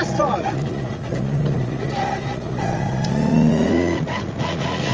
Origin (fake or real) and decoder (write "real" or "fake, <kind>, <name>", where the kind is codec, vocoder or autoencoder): fake, vocoder, Vocos